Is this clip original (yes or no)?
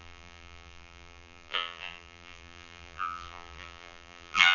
no